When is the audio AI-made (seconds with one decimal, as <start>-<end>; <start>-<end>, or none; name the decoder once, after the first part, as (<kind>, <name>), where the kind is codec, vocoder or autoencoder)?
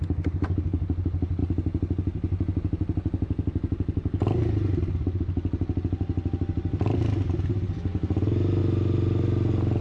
none